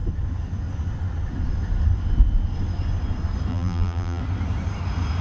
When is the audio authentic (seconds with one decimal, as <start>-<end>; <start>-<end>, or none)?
0.0-3.5; 4.2-5.2